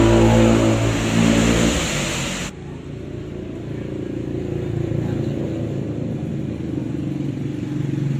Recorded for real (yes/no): yes